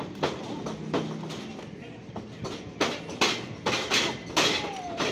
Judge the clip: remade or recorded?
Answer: recorded